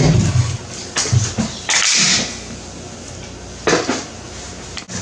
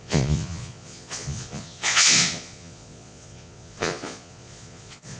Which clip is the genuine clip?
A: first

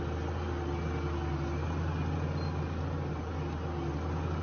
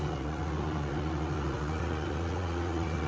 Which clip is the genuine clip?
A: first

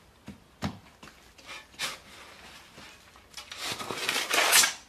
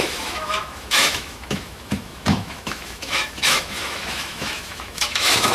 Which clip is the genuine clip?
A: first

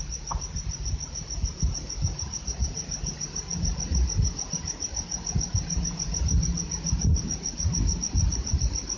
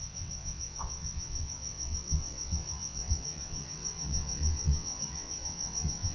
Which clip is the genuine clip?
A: first